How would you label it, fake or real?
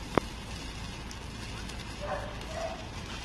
real